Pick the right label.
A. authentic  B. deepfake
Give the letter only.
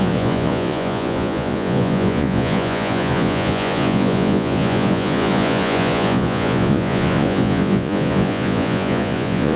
B